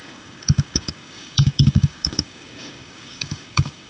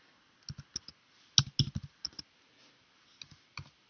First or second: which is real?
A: second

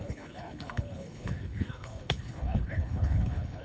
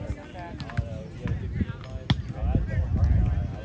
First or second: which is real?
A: second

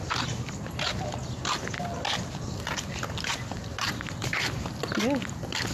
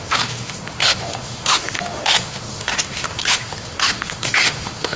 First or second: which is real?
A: first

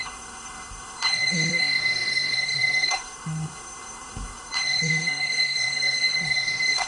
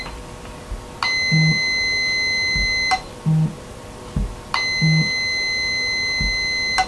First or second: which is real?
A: second